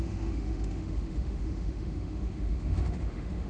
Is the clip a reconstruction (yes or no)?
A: yes